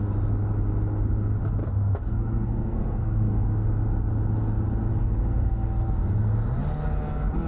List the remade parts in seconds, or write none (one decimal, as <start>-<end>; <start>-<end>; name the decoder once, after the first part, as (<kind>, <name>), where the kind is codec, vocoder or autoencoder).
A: 1.6-3.7 (codec, SNAC); 4.9-6.3